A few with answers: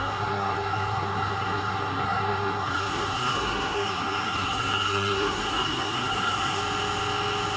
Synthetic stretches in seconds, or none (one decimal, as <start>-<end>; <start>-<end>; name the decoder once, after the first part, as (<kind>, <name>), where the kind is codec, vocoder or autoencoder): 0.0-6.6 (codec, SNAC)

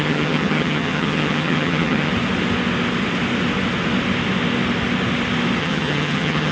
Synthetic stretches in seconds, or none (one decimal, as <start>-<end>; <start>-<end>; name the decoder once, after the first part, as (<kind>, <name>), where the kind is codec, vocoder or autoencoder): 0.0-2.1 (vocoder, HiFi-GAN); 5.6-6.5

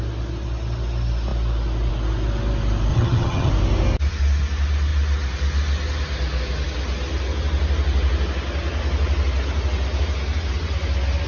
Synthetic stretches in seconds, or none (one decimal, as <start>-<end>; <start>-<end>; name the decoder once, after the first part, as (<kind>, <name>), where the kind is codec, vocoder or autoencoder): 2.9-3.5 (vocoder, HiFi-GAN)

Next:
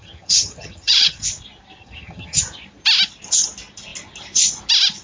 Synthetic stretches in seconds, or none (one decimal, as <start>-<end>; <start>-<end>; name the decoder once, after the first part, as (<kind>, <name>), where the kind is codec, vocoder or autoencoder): 0.0-1.2 (vocoder, HiFi-GAN); 1.8-2.4